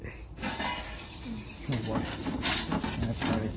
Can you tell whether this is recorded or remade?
recorded